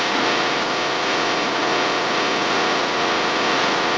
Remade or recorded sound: remade